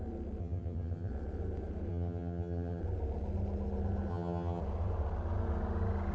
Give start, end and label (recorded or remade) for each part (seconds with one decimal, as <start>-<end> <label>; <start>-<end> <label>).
0.0-0.4 recorded; 0.4-1.1 remade; 1.1-1.9 recorded; 1.9-2.8 remade; 2.8-4.1 recorded; 4.1-4.6 remade; 4.6-6.1 recorded